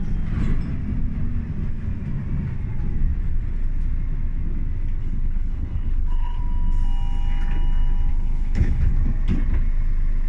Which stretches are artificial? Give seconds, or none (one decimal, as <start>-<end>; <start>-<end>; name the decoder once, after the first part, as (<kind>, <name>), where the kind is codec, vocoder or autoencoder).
5.0-6.4 (codec, HILCodec); 8.1-8.9